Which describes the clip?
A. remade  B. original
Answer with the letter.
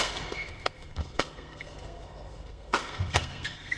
A